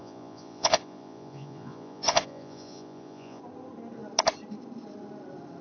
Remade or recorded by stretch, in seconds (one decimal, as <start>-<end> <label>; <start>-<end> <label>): 0.0-3.4 remade; 3.4-5.6 recorded

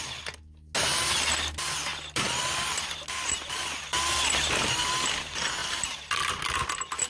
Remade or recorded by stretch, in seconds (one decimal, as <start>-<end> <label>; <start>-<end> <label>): 0.0-7.1 recorded

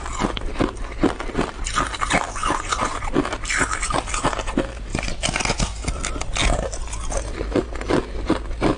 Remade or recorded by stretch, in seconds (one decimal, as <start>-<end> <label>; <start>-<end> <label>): 0.0-2.4 recorded; 2.4-3.1 remade; 3.1-8.8 recorded